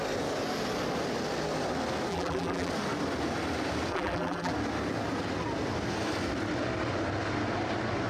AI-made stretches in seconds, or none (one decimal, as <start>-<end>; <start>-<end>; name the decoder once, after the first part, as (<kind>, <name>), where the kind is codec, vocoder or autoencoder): 2.1-2.7 (vocoder, BigVGAN v2); 3.9-4.5